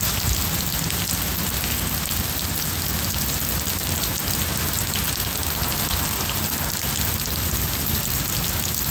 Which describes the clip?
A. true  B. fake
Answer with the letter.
A